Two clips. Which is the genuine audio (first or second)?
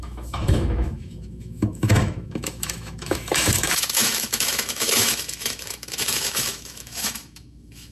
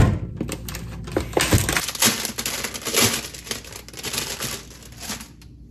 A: second